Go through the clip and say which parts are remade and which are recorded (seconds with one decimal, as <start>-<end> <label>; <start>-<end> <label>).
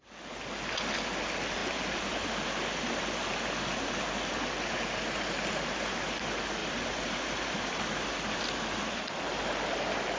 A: 0.0-1.6 recorded; 1.6-2.3 remade; 2.3-6.6 recorded; 6.6-8.4 remade; 8.4-10.2 recorded